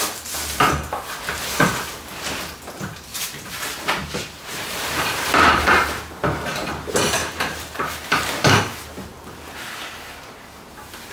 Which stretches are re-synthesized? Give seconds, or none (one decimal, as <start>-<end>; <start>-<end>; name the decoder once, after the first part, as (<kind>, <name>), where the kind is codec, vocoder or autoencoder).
3.1-6.7 (vocoder, BigVGAN v2); 7.2-8.5